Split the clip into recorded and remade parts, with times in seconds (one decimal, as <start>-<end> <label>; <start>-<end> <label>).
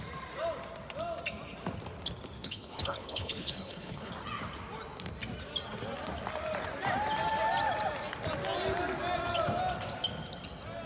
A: 0.0-2.4 recorded; 2.4-4.1 remade; 4.1-10.9 recorded